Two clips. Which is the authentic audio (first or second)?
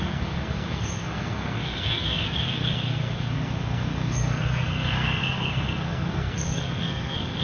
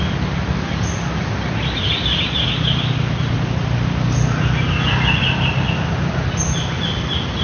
second